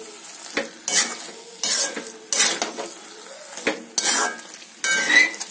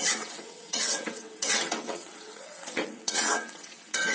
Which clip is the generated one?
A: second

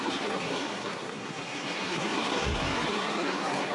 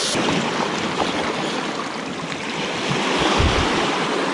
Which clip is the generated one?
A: first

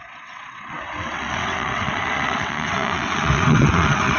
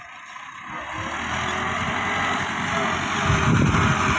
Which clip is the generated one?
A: first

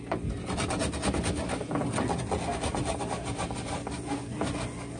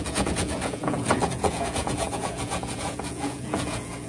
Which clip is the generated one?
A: second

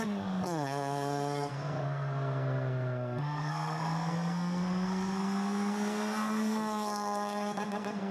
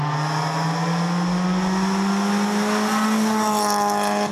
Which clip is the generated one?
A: first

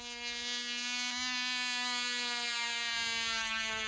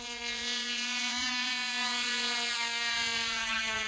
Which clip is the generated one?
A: second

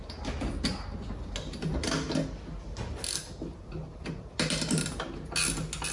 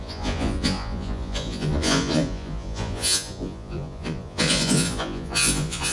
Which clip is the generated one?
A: second